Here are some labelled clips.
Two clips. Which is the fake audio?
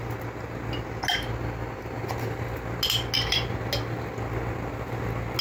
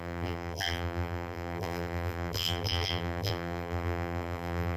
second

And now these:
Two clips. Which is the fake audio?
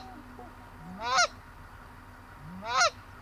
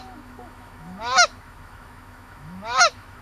second